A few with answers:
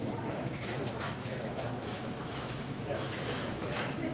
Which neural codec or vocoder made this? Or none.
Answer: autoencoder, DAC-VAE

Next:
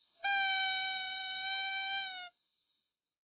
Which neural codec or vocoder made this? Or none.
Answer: codec, DAC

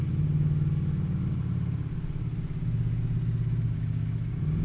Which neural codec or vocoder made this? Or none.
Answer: none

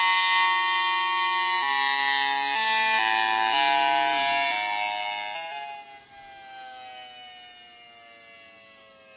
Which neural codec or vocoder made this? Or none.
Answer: none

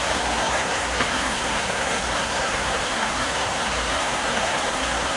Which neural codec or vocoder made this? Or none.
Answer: codec, SNAC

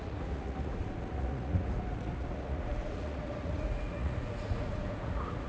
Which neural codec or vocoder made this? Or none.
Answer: vocoder, Vocos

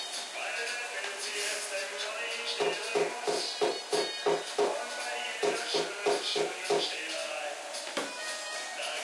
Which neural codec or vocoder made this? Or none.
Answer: none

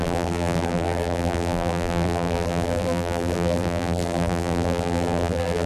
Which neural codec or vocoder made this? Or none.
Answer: vocoder, BigVGAN v2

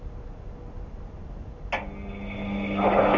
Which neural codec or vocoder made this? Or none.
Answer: none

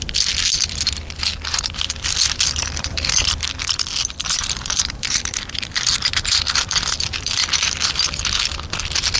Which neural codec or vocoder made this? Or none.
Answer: vocoder, BigVGAN v2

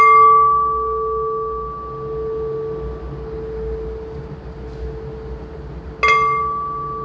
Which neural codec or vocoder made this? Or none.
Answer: none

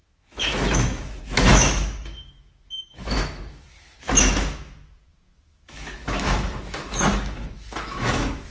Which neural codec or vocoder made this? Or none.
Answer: autoencoder, DAC-VAE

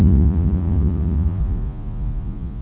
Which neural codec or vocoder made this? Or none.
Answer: vocoder, Vocos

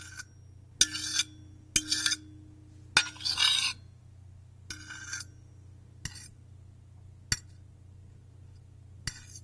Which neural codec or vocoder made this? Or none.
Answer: none